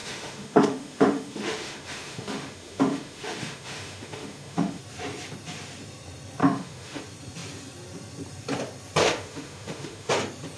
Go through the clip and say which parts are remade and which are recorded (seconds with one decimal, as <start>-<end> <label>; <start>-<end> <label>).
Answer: 0.0-4.8 remade; 4.8-6.4 recorded; 6.4-7.0 remade; 7.0-9.0 recorded; 9.0-10.1 remade; 10.1-10.6 recorded